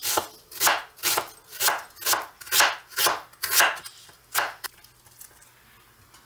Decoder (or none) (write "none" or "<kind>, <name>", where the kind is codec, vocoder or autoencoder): none